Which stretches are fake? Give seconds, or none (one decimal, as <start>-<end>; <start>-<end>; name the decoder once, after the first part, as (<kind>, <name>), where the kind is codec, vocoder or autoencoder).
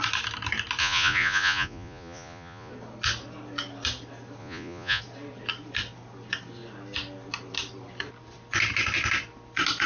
0.8-2.7 (vocoder, Vocos); 4.4-5.0